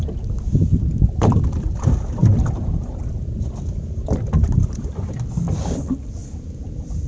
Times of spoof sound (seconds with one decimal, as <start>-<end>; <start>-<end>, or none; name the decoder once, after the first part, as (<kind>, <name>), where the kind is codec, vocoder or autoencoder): 0.7-1.4 (vocoder, BigVGAN v2); 6.2-7.1

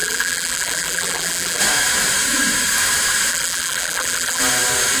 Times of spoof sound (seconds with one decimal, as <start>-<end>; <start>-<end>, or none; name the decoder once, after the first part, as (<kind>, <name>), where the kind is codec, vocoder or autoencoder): 0.0-1.6 (vocoder, BigVGAN v2); 3.3-4.4